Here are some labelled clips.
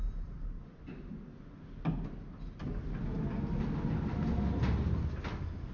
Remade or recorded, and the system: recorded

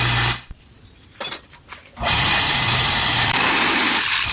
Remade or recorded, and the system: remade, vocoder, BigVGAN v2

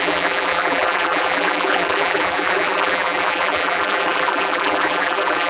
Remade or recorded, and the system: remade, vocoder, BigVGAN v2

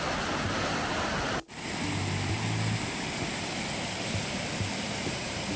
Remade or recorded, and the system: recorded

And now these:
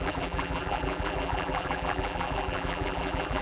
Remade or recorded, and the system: remade, vocoder, BigVGAN v2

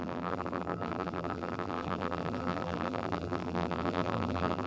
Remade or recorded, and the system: remade, vocoder, BigVGAN v2